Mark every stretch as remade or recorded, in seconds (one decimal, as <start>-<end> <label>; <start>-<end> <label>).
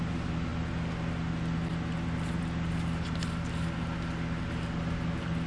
0.0-5.5 recorded